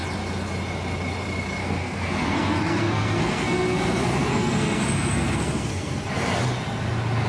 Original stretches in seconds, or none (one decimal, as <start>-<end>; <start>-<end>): 0.0-1.6; 6.0-7.3